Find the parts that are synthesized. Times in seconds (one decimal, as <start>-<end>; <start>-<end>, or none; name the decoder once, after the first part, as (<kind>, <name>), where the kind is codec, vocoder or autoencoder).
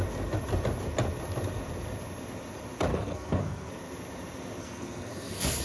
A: 2.9-3.7 (codec, SNAC); 4.6-5.6